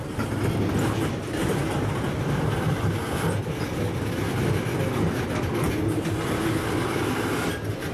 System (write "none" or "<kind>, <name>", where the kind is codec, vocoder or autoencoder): none